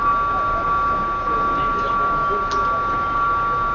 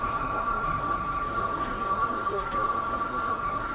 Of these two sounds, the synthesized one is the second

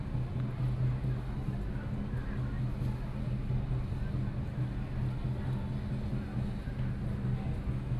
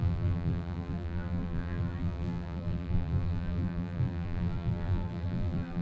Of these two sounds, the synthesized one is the second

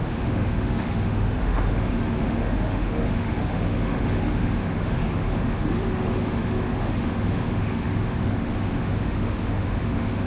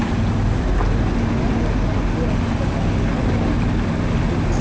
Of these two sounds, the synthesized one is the first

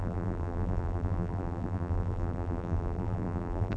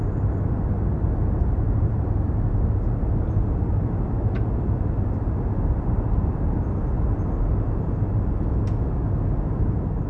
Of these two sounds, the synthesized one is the first